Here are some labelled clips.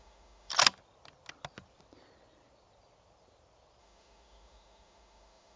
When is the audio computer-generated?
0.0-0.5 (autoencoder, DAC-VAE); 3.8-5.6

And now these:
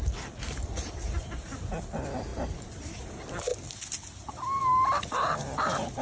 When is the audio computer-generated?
none

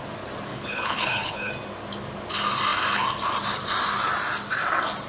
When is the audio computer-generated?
0.5-1.5 (codec, HILCodec)